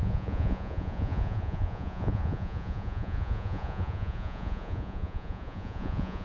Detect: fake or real fake